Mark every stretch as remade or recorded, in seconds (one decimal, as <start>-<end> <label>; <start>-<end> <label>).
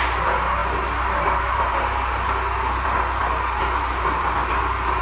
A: 0.0-5.0 recorded